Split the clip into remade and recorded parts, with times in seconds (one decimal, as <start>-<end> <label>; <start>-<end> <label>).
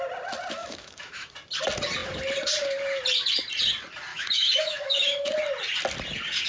0.0-0.6 recorded; 0.6-1.3 remade; 1.3-4.1 recorded; 4.1-5.3 remade; 5.3-6.5 recorded